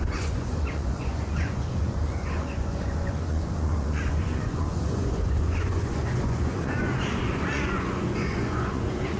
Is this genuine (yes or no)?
no